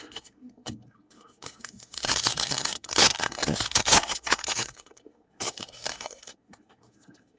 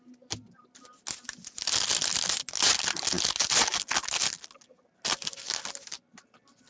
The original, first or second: second